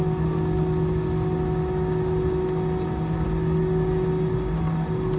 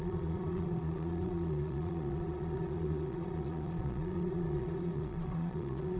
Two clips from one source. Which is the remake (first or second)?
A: second